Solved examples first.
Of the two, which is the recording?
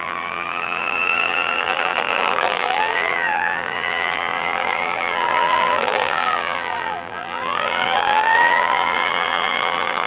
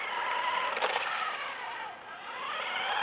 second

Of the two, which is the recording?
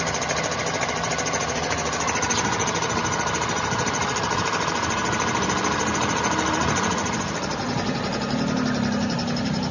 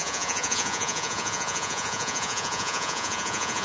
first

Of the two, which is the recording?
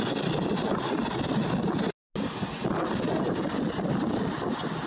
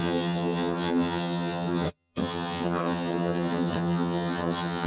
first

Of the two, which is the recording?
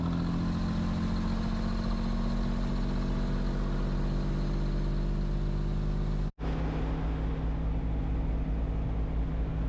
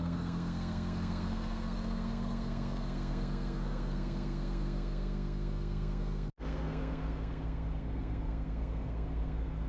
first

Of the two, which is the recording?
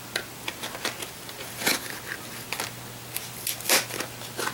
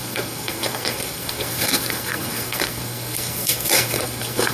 first